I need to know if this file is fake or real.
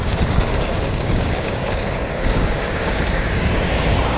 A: fake